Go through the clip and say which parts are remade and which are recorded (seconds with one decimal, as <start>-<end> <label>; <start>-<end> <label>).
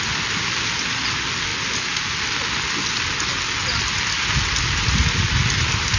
0.0-6.0 recorded